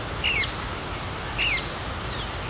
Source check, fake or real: real